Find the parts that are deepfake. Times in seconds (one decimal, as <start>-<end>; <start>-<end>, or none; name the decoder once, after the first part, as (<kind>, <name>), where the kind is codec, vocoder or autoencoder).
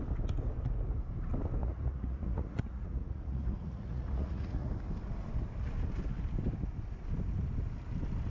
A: 1.6-4.7 (vocoder, Vocos)